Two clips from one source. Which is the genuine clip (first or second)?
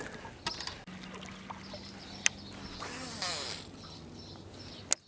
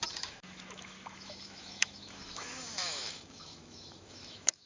first